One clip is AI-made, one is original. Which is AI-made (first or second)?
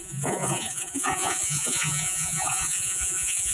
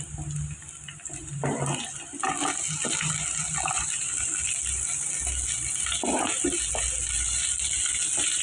first